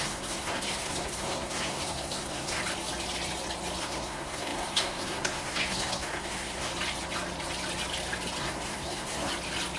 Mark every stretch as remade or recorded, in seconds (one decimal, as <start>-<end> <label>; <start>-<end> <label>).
0.0-2.6 remade; 2.6-3.8 recorded; 3.8-6.7 remade; 6.7-8.4 recorded; 8.4-9.3 remade; 9.3-9.8 recorded

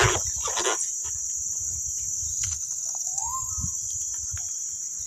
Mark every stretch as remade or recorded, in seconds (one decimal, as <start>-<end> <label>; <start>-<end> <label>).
0.0-2.3 recorded; 2.3-3.5 remade; 3.5-5.1 recorded

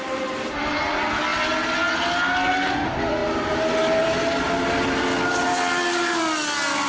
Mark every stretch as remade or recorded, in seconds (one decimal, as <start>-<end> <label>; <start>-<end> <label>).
0.0-6.9 recorded

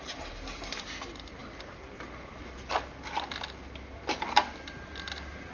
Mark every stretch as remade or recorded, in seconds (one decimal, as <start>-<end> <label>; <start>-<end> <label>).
0.0-5.5 recorded

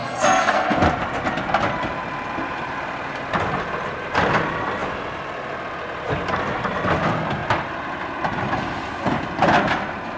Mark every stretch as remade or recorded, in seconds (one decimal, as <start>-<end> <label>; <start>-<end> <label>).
0.0-0.8 remade; 0.8-10.2 recorded

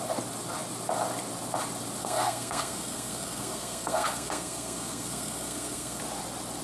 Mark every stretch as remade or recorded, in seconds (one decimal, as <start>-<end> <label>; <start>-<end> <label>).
0.0-2.0 recorded; 2.0-6.0 remade; 6.0-6.6 recorded

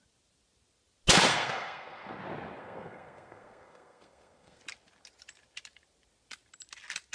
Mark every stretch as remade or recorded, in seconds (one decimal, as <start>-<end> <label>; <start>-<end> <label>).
0.0-1.3 recorded; 1.3-2.2 remade; 2.2-2.6 recorded; 2.6-4.6 remade; 4.6-7.1 recorded

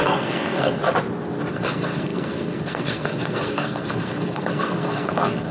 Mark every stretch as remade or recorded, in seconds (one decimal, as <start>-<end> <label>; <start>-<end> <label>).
0.0-0.8 remade; 0.8-1.5 recorded; 1.5-5.5 remade